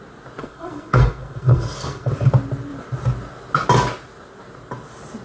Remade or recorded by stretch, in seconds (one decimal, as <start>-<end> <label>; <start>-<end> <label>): 0.0-0.4 recorded; 0.4-2.1 remade; 2.1-5.2 recorded